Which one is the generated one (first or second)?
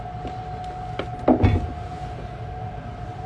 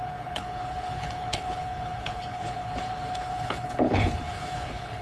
second